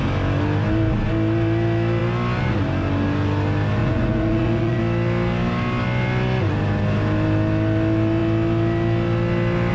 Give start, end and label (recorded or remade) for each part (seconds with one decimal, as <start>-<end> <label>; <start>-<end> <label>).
0.0-3.8 recorded; 3.8-4.8 remade; 4.8-9.7 recorded